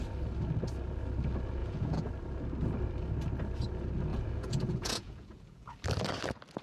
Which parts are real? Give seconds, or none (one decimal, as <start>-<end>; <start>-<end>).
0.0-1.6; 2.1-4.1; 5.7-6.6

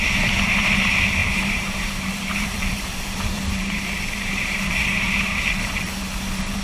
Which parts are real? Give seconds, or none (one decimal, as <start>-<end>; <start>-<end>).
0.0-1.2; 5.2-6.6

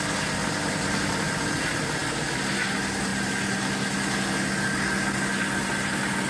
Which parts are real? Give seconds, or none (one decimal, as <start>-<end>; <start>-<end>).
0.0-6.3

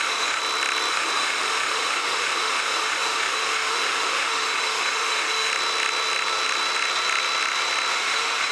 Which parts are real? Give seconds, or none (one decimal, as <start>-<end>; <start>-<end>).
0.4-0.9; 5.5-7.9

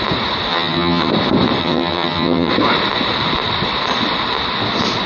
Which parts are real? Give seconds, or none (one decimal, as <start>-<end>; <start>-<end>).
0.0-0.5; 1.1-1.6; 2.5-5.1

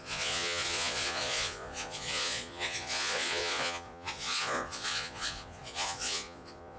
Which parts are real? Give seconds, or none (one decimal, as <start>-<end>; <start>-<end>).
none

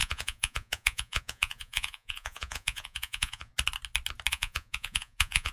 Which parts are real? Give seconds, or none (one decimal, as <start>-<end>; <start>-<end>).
3.5-4.3

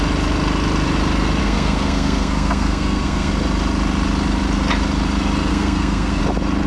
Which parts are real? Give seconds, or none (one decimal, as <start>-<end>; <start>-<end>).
0.0-1.4; 3.3-5.5; 6.2-6.7